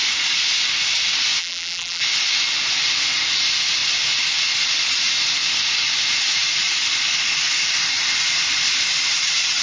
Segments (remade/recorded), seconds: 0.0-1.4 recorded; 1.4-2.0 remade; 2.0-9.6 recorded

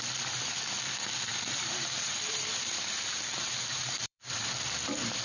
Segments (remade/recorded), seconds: 0.0-1.3 recorded; 1.3-4.4 remade; 4.4-5.2 recorded

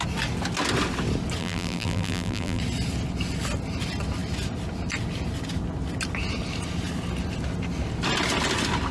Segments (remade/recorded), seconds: 0.0-1.4 recorded; 1.4-2.6 remade; 2.6-8.9 recorded